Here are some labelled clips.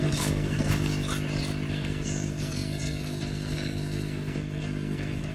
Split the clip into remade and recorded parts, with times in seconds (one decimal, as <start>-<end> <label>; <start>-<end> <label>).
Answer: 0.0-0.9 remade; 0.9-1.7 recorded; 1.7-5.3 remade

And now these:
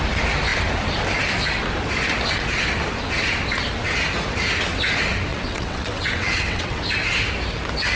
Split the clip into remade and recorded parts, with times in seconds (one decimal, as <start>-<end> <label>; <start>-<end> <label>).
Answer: 0.0-5.3 recorded; 5.3-6.8 remade; 6.8-8.0 recorded

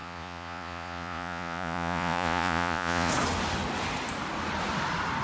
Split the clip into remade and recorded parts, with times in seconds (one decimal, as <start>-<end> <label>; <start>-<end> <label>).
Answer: 0.0-3.1 remade; 3.1-5.2 recorded

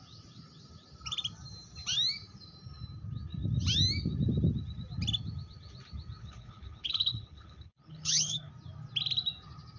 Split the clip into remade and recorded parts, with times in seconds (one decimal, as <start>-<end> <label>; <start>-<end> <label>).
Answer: 0.0-6.2 recorded; 6.2-8.5 remade; 8.5-9.8 recorded